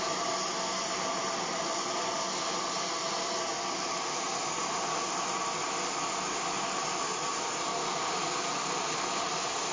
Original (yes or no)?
yes